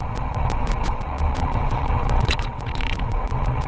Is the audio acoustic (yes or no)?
no